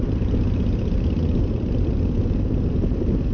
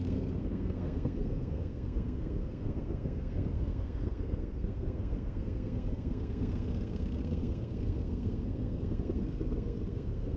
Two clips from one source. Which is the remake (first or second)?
second